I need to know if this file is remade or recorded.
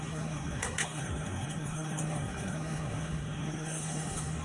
remade